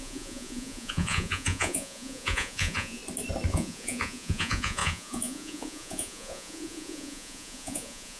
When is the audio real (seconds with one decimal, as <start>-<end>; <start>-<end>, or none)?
3.0-3.5